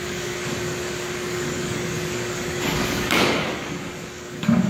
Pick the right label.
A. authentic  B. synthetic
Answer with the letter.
B